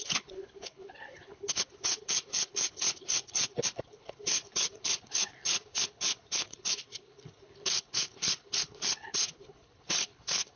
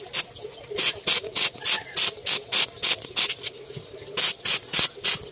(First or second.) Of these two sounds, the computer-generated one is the first